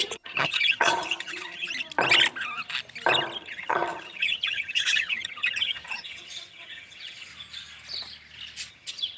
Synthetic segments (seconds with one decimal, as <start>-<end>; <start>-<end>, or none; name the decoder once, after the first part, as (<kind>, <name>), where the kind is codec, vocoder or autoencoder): 0.0-1.7 (vocoder, HiFi-GAN); 3.4-7.3; 8.7-9.2